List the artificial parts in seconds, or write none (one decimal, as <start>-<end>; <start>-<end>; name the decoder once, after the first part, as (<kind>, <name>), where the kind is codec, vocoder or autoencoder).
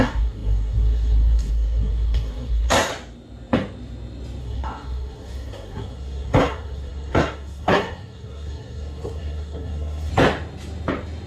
0.0-2.9 (codec, SNAC); 4.4-10.1